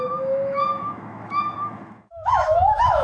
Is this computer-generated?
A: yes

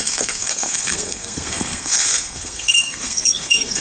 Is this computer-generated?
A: yes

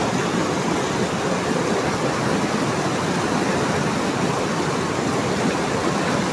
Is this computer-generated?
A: no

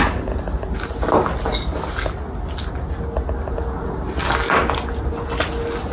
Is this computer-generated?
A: no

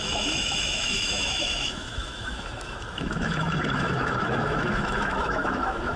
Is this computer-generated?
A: yes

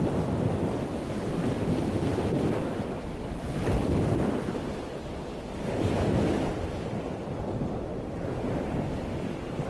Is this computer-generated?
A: no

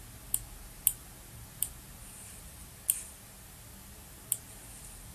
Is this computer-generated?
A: no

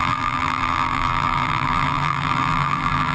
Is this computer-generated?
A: yes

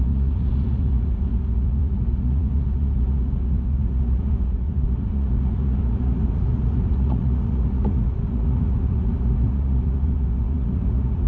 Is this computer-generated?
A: yes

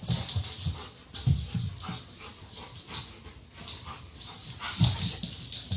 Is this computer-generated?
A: no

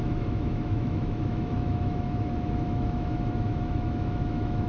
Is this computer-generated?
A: yes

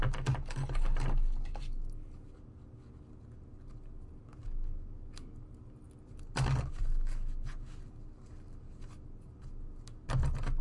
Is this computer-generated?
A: no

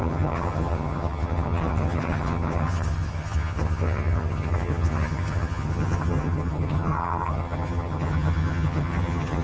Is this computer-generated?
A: yes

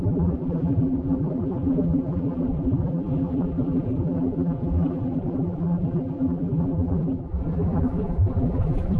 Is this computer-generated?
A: yes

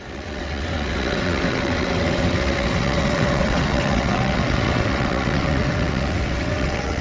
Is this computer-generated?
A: yes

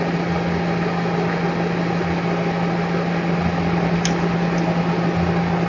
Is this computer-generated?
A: no